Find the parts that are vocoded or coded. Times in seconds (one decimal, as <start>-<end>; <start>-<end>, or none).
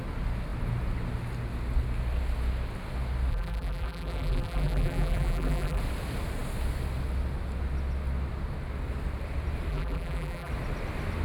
3.3-5.8; 9.7-10.5